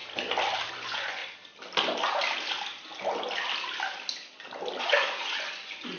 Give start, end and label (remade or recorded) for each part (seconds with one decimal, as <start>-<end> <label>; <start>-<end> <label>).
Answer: 0.0-0.7 recorded; 0.7-1.2 remade; 1.2-4.8 recorded; 4.8-6.0 remade